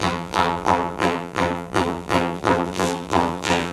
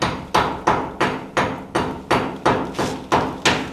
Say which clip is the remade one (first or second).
first